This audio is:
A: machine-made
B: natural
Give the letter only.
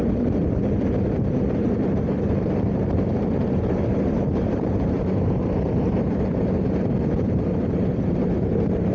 A